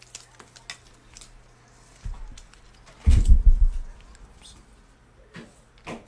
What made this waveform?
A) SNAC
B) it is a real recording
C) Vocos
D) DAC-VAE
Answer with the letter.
B